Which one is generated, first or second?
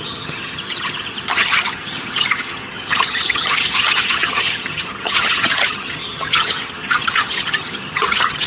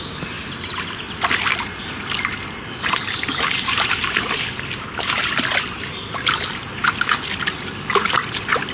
first